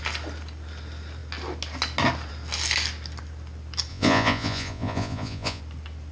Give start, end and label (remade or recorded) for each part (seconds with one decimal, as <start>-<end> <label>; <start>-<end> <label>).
0.0-3.9 recorded; 3.9-5.6 remade; 5.6-6.1 recorded